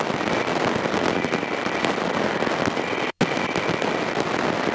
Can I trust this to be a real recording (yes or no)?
yes